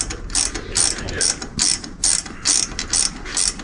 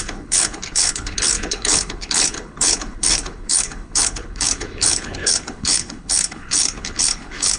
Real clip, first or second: first